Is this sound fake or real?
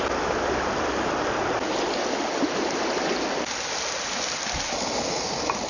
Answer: real